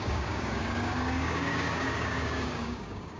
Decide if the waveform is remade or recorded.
remade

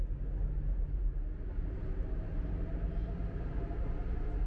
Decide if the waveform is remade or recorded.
recorded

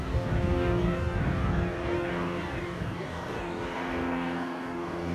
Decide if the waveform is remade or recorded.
remade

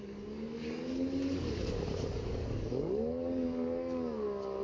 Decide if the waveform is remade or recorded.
remade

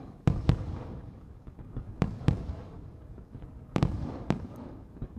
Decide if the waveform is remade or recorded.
remade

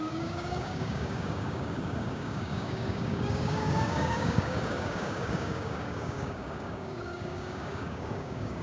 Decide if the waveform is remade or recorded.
remade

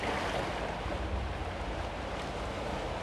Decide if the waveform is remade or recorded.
recorded